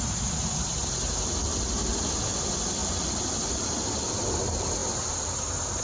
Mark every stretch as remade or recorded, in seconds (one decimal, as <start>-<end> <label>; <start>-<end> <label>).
0.0-5.8 recorded

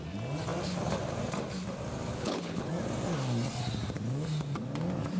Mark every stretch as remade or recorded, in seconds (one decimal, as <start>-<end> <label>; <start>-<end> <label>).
0.0-2.1 recorded; 2.1-2.7 remade; 2.7-5.2 recorded

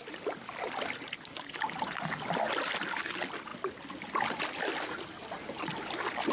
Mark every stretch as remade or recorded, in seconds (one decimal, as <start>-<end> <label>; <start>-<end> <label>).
0.0-6.3 recorded

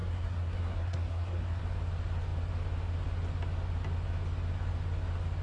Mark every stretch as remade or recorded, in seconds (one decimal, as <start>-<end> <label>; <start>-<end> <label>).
0.0-1.6 remade; 1.6-5.4 recorded

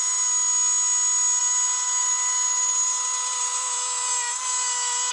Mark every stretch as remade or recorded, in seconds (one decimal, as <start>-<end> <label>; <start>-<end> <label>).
0.0-1.4 recorded; 1.4-5.1 remade